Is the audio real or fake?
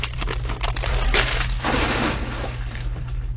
fake